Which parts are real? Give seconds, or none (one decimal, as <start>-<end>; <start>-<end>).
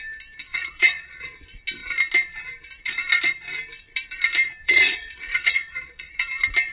0.0-0.5; 1.4-4.6; 6.1-6.7